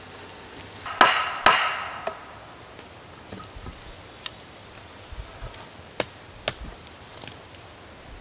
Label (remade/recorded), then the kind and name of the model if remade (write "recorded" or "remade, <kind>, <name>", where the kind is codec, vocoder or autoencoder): recorded